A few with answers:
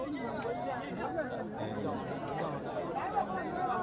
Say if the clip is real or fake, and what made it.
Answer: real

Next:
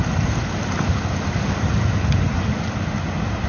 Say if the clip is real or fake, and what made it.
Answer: real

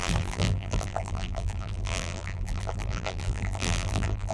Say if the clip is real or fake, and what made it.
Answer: fake, vocoder, BigVGAN v2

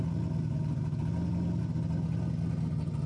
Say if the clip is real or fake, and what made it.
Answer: real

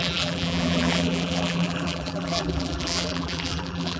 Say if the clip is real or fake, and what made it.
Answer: fake, vocoder, BigVGAN v2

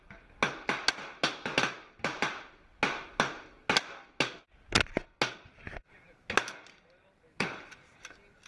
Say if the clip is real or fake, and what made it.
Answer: real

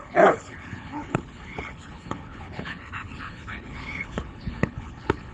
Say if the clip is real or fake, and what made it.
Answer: fake, codec, HILCodec